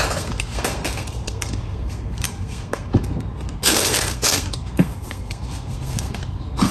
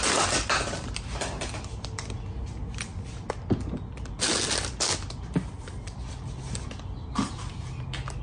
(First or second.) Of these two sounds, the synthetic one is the first